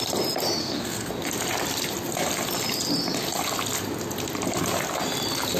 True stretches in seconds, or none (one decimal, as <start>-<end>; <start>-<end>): 0.0-0.6; 1.1-5.6